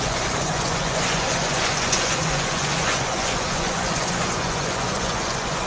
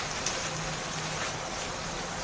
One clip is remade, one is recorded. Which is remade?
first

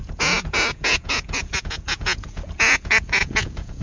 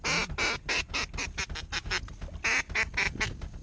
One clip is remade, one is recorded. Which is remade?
first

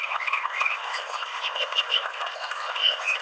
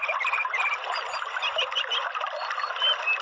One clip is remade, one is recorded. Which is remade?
first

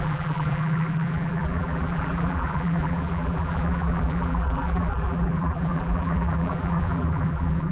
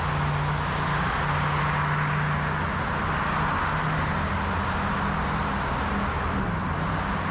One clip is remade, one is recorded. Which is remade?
first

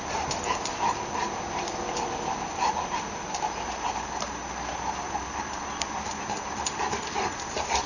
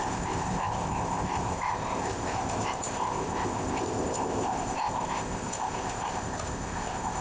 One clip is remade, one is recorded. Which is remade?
second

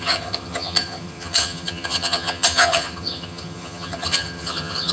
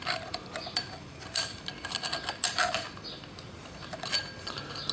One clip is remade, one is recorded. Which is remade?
first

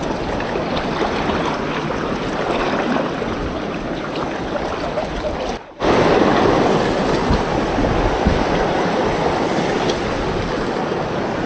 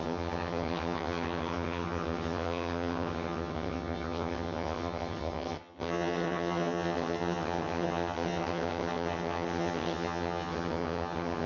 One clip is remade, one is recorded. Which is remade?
second